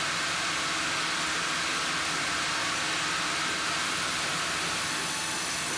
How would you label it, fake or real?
real